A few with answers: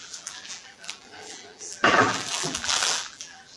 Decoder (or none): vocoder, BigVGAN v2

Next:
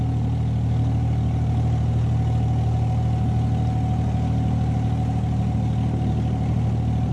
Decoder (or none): none